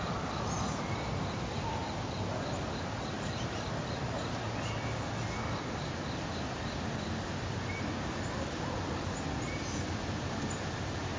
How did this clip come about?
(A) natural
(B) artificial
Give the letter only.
A